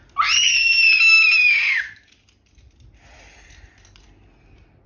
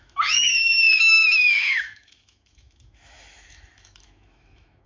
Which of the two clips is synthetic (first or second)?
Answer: second